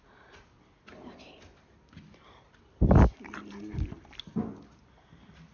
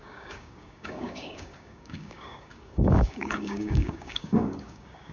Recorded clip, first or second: first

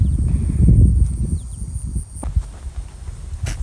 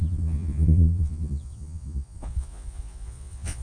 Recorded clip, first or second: first